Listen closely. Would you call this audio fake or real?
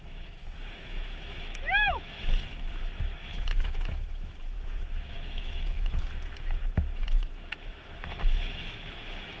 fake